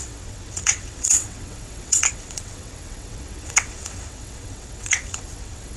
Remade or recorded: remade